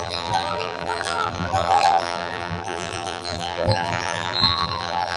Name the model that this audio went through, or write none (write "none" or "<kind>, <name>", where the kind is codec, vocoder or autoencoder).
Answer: vocoder, BigVGAN v2